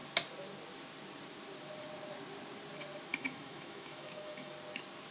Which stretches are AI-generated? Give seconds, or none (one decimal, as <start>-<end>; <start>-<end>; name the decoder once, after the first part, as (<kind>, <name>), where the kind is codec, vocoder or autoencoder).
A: 3.1-4.5 (autoencoder, DAC-VAE)